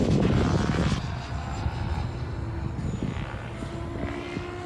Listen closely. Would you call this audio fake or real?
real